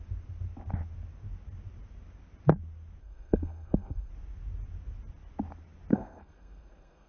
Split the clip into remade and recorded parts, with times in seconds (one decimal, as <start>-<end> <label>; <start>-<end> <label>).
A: 0.0-3.0 recorded; 3.0-4.1 remade; 4.1-5.9 recorded; 5.9-7.1 remade

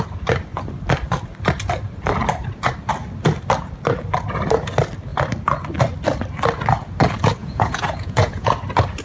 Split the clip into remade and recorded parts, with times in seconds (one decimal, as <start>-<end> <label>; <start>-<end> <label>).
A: 0.0-7.4 recorded; 7.4-8.5 remade; 8.5-9.0 recorded

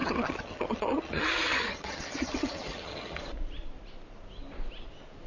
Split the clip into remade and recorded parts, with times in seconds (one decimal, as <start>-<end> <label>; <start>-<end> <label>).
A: 0.0-3.2 remade; 3.2-5.3 recorded

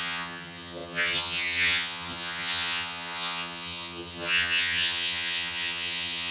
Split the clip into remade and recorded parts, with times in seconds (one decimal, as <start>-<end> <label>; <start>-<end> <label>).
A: 0.0-6.3 remade